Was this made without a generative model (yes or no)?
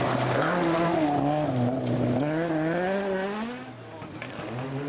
yes